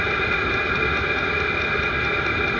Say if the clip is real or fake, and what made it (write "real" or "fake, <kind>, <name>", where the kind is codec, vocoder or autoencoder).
real